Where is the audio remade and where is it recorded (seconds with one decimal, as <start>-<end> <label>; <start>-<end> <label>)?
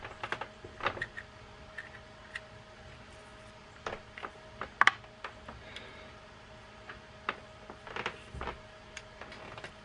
0.0-9.8 recorded